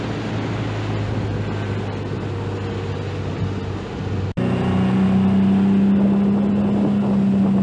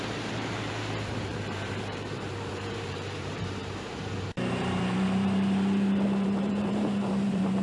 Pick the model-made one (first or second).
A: second